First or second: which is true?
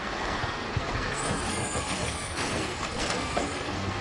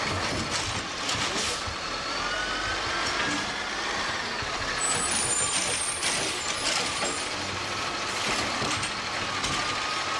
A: second